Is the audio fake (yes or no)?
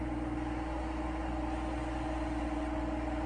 no